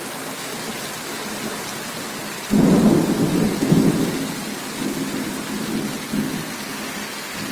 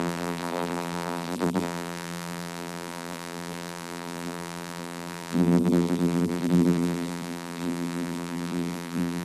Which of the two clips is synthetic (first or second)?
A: second